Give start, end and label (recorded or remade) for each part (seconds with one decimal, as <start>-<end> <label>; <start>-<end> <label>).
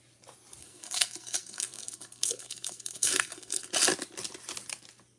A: 0.0-0.6 recorded; 0.6-3.7 remade; 3.7-5.2 recorded